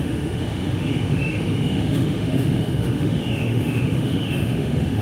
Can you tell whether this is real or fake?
fake